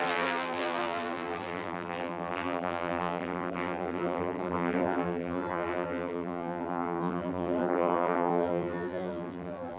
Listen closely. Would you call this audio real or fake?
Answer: fake